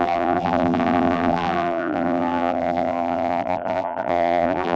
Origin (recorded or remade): remade